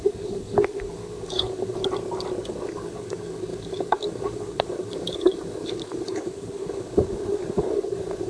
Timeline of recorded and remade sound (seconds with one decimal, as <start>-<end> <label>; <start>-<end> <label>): 0.0-1.8 remade; 1.8-2.4 recorded; 2.4-8.3 remade